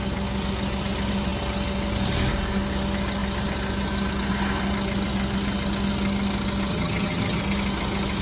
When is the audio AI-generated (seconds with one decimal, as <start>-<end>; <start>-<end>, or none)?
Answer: 6.7-7.4